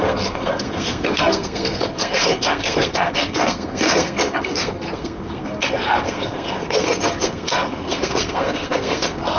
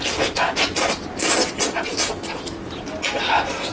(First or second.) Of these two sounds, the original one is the second